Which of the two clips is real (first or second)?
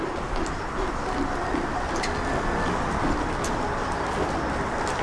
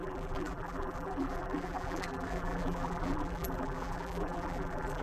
first